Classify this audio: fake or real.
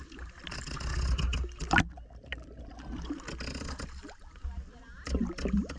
real